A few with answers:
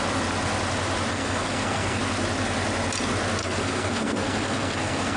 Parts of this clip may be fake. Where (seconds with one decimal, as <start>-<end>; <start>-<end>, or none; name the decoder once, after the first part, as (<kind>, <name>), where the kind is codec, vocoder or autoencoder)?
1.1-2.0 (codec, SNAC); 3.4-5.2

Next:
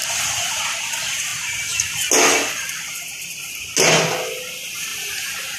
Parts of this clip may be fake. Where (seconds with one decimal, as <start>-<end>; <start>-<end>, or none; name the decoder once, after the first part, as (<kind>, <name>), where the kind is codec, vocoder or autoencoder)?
none

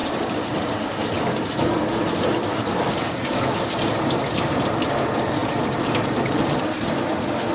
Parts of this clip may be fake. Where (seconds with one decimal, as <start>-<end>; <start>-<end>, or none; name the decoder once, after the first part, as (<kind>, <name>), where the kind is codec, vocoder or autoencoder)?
0.0-4.5 (vocoder, BigVGAN v2); 5.4-7.1